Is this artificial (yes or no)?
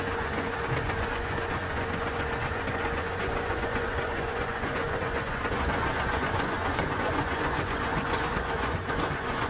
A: yes